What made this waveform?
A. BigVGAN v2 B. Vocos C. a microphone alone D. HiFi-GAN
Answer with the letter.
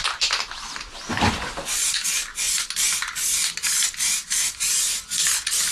C